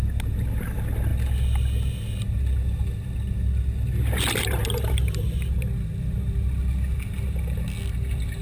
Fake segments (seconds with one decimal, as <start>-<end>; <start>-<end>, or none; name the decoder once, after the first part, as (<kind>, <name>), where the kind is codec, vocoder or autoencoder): none